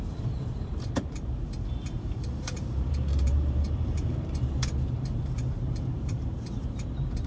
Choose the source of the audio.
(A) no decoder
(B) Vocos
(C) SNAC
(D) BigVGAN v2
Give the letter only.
D